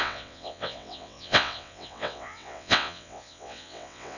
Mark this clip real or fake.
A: fake